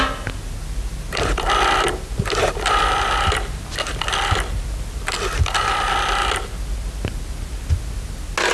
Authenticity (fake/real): real